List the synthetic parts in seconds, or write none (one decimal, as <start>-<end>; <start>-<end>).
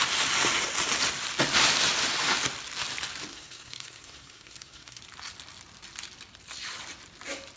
3.3-5.0